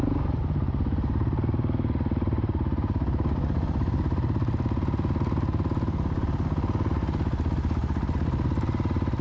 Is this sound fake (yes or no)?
no